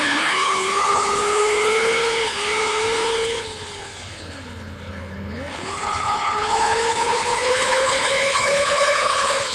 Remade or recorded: remade